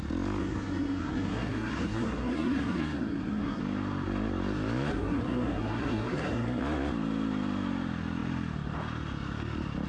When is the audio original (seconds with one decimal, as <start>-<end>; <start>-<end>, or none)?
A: 0.0-0.4; 3.6-4.9; 6.6-9.9